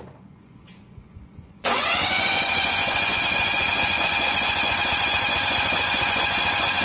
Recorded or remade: remade